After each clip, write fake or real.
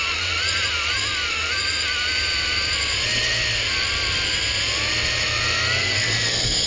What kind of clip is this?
real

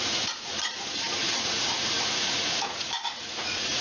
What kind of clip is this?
fake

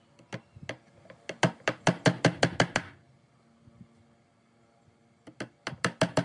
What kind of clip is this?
real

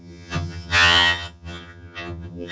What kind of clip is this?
fake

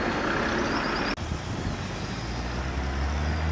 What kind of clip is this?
real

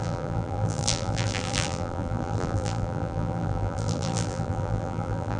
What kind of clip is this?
fake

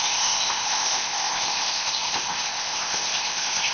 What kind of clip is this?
fake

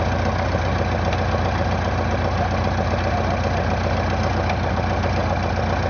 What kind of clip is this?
real